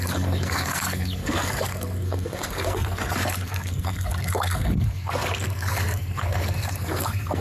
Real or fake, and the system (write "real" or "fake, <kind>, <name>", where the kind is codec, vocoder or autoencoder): fake, codec, SNAC